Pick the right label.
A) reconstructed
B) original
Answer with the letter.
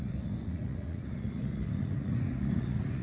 A